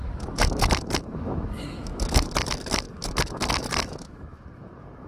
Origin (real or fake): fake